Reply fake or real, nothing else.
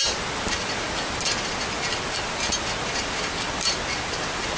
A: real